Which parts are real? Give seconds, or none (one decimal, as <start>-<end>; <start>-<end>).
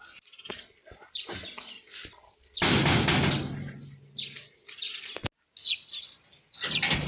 0.0-7.1